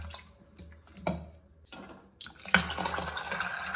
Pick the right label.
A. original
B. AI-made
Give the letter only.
A